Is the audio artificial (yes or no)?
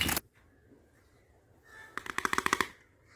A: no